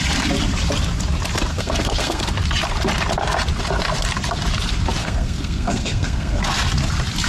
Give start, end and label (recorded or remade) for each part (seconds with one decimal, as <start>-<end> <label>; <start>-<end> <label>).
0.0-1.5 recorded; 1.5-2.2 remade; 2.2-5.0 recorded; 5.0-6.4 remade; 6.4-7.3 recorded